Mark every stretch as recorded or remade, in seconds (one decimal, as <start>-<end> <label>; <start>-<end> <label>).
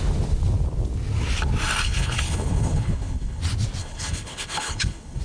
0.0-1.8 recorded; 1.8-3.4 remade; 3.4-3.8 recorded; 3.8-5.2 remade